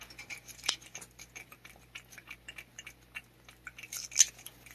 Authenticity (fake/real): real